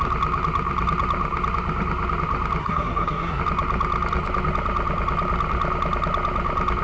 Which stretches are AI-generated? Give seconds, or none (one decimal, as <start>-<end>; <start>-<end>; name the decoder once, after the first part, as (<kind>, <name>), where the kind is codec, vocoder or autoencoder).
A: 2.6-3.4 (codec, SNAC)